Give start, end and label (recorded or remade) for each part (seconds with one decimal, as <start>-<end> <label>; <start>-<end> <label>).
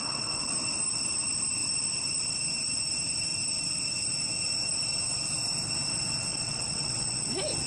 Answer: 0.0-0.5 remade; 0.5-6.3 recorded; 6.3-7.3 remade; 7.3-7.7 recorded